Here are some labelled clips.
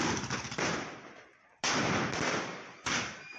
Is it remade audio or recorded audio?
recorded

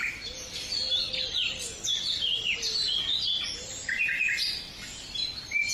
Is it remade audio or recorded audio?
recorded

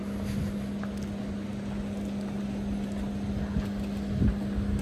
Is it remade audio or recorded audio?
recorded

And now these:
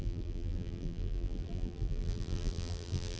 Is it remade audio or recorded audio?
remade